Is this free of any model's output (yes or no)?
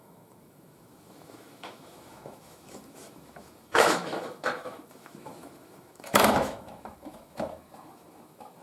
no